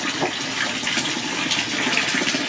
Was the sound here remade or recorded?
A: recorded